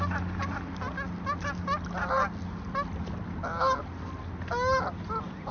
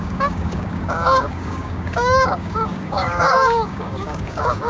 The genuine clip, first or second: first